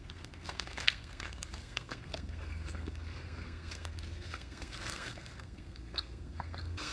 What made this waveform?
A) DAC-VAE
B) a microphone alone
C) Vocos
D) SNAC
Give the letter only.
D